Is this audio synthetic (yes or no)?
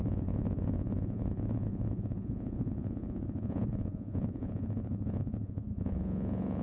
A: yes